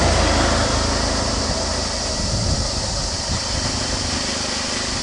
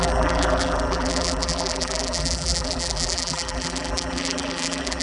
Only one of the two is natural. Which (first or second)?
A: first